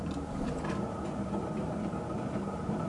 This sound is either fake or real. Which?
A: fake